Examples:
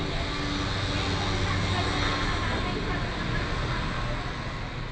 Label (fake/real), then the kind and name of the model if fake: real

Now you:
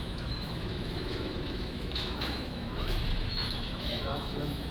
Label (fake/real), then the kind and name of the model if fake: fake, autoencoder, DAC-VAE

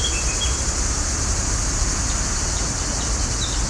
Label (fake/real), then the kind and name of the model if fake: real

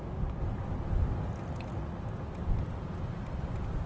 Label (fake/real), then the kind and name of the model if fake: real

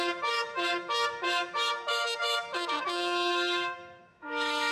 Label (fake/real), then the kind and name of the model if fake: fake, autoencoder, DAC-VAE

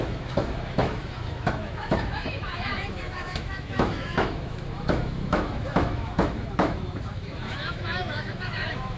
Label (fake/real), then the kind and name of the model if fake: fake, autoencoder, DAC-VAE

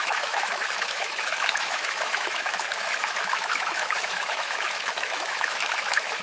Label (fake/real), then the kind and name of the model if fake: fake, autoencoder, DAC-VAE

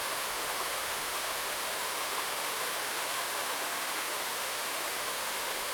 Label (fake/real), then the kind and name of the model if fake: fake, autoencoder, DAC-VAE